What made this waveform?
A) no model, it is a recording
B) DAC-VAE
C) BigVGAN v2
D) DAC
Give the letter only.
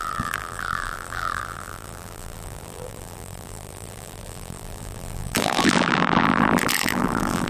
C